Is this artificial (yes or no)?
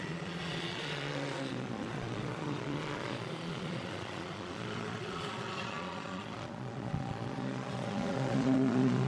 yes